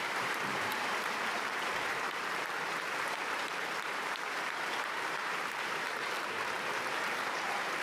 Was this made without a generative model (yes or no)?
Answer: no